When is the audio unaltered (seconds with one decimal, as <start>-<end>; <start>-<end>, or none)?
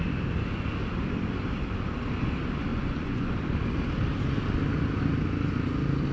0.0-2.7; 3.3-6.1